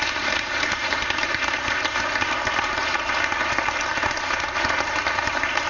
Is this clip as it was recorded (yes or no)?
no